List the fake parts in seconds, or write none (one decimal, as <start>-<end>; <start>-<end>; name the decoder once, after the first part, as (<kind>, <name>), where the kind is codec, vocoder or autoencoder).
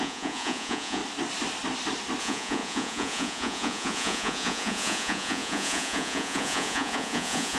0.0-1.0 (vocoder, Vocos); 2.2-7.6